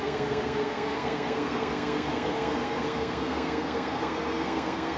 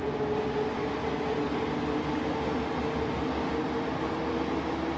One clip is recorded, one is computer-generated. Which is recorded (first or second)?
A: second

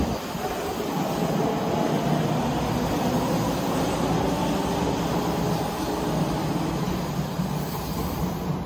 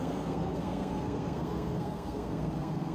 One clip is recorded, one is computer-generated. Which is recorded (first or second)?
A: first